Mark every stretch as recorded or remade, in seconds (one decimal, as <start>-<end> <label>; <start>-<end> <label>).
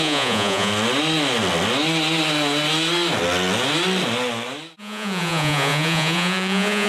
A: 0.0-0.7 remade; 0.7-4.8 recorded; 4.8-6.9 remade